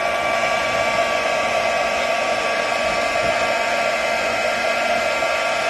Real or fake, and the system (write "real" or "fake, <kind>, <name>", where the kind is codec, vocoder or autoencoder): fake, vocoder, Vocos